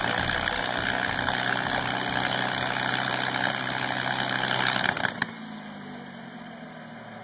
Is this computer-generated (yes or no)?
no